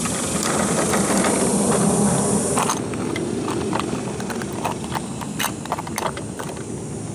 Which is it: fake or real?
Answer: real